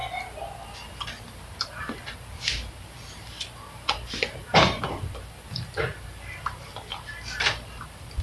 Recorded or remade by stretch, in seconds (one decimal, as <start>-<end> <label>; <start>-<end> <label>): 0.0-1.7 recorded; 1.7-8.2 remade